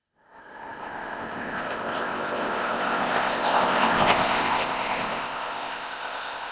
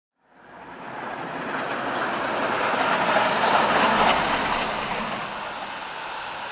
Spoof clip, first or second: first